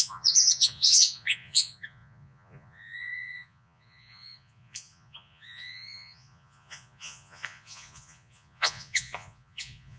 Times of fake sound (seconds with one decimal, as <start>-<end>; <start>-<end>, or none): 0.0-10.0